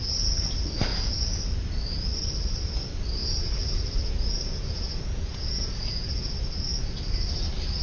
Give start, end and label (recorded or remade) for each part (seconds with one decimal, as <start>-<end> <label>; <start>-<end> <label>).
0.0-0.9 recorded; 0.9-1.4 remade; 1.4-3.2 recorded; 3.2-6.3 remade; 6.3-7.8 recorded